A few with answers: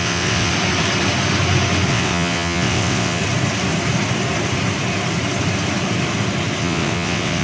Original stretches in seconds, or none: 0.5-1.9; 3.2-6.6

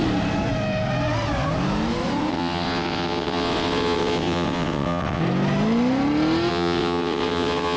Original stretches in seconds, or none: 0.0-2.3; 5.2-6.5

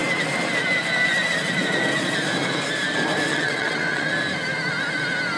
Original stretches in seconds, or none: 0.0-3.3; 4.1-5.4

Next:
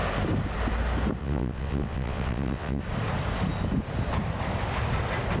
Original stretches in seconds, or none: 0.0-1.2; 2.8-5.4